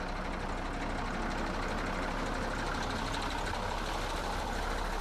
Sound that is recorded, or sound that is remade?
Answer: recorded